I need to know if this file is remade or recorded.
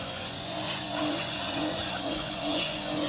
remade